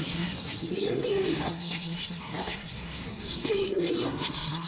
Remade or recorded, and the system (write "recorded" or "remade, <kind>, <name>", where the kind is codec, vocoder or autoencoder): remade, codec, SNAC